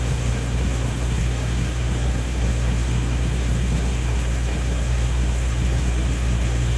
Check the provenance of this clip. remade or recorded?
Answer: remade